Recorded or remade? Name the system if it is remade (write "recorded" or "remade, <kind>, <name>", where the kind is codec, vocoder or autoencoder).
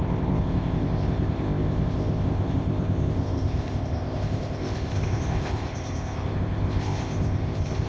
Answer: remade, codec, ZipCodec